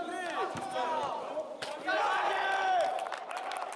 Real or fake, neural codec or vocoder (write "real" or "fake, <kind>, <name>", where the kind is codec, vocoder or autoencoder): real